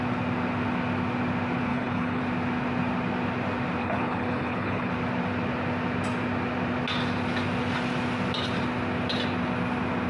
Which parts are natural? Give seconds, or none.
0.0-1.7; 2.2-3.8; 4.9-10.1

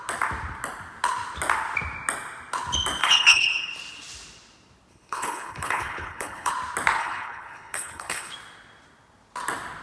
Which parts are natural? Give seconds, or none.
0.0-3.0; 3.6-4.9; 6.5-7.0; 8.3-9.8

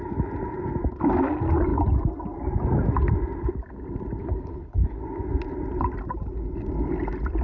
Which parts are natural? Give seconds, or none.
0.0-4.2; 5.0-7.4